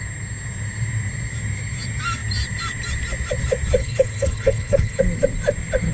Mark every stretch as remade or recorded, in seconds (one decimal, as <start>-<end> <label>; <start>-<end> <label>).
0.0-3.8 recorded; 3.8-5.0 remade; 5.0-5.9 recorded